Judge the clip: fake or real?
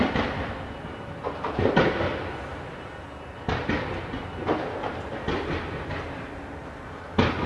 real